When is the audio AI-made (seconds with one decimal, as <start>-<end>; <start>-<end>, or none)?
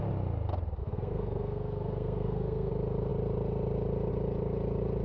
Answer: 0.8-2.7